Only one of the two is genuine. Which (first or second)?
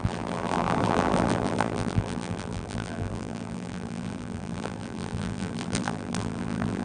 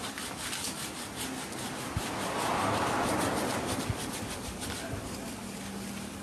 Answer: second